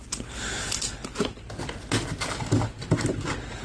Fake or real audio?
real